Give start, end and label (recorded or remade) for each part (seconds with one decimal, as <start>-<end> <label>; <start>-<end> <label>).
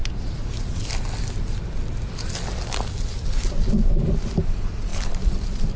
0.0-4.9 recorded; 4.9-5.8 remade